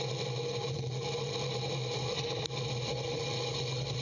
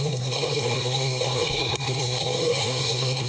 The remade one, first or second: second